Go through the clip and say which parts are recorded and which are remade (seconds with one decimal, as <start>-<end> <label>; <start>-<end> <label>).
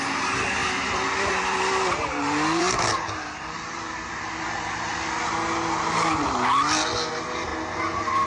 0.0-0.6 recorded; 0.6-5.3 remade; 5.3-8.3 recorded